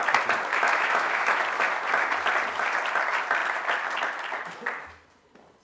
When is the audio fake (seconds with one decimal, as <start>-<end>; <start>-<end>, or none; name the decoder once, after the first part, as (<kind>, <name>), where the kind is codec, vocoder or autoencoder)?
0.5-1.4 (autoencoder, DAC-VAE)